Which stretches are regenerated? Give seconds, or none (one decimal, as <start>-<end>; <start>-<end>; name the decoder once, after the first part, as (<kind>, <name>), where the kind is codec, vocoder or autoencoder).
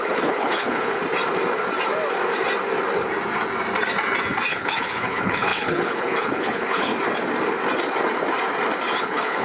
0.0-1.0 (codec, HILCodec); 4.5-6.9; 9.0-9.4